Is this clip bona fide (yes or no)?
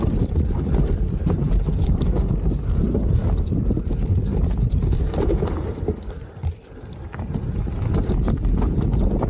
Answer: no